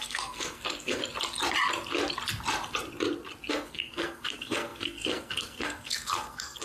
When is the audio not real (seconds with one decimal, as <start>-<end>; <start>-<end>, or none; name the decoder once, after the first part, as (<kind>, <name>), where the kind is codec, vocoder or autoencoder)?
0.0-1.0 (codec, SNAC); 3.5-6.6